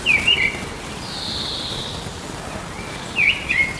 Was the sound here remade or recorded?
recorded